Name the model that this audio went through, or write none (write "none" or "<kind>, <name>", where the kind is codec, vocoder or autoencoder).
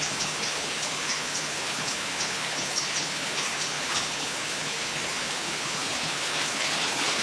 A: codec, HILCodec